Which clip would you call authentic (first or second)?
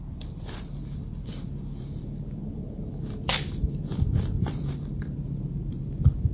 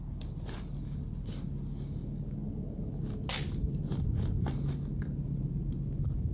second